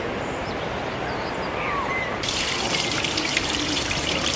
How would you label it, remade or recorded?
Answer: remade